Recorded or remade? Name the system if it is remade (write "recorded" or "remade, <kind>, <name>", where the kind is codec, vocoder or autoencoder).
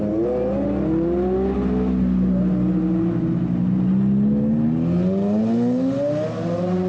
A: recorded